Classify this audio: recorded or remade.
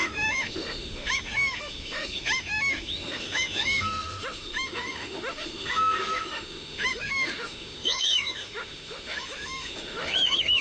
remade